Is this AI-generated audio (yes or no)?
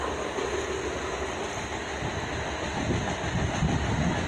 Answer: no